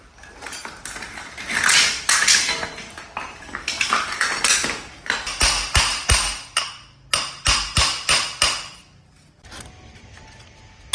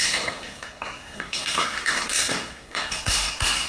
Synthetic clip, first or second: second